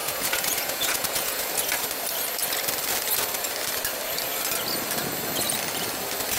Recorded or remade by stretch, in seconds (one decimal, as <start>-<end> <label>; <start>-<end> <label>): 0.0-1.5 remade; 1.5-6.4 recorded

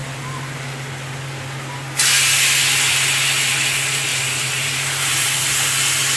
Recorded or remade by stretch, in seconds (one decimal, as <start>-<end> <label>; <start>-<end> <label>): 0.0-4.1 recorded; 4.1-5.4 remade; 5.4-6.2 recorded

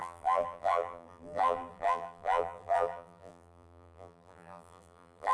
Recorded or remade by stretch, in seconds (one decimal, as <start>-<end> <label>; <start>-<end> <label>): 0.0-5.3 remade

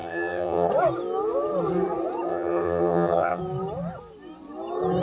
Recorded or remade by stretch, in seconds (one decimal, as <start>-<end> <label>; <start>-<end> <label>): 0.0-0.7 remade; 0.7-2.3 recorded; 2.3-3.4 remade; 3.4-5.0 recorded

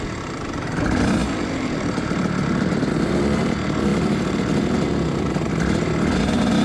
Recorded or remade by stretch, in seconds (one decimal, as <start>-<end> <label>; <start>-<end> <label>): 0.0-1.2 recorded; 1.2-2.9 remade; 2.9-3.9 recorded; 3.9-5.5 remade; 5.5-6.6 recorded

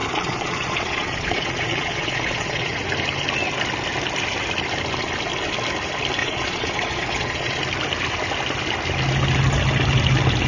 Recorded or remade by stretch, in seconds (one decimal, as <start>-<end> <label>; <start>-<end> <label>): 0.0-2.8 remade; 2.8-6.2 recorded; 6.2-7.6 remade; 7.6-10.5 recorded